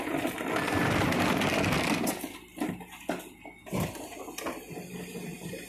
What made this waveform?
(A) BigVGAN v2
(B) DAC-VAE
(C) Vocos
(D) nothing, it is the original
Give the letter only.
D